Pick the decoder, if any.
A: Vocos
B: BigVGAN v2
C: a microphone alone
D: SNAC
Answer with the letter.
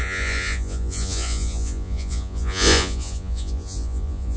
A